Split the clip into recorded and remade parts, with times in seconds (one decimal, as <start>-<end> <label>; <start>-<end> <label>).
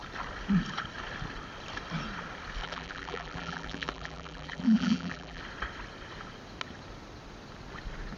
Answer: 0.0-2.6 recorded; 2.6-5.4 remade; 5.4-8.2 recorded